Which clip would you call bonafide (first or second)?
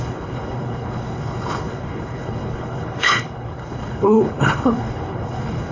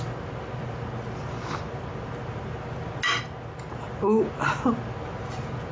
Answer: second